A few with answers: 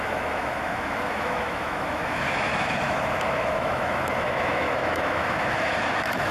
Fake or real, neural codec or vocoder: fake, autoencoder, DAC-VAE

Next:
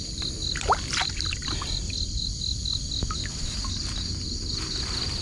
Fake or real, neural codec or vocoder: real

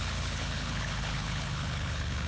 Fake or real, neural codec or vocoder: fake, codec, HILCodec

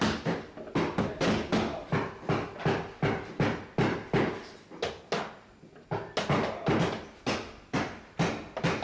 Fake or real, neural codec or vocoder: real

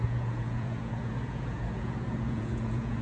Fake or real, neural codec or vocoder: fake, vocoder, Vocos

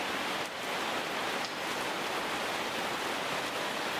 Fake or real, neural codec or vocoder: real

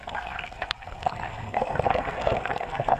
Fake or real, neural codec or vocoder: fake, codec, SNAC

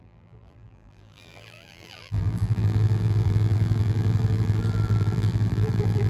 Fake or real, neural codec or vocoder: fake, vocoder, BigVGAN v2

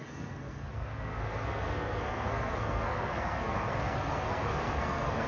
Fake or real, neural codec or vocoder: fake, codec, SNAC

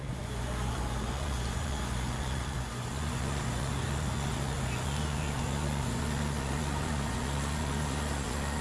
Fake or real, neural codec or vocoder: fake, vocoder, Vocos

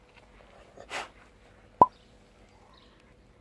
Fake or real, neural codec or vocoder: real